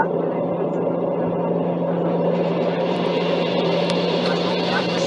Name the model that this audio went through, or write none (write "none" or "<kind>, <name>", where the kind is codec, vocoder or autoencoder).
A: vocoder, BigVGAN v2